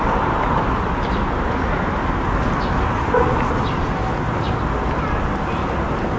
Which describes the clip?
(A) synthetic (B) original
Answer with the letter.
B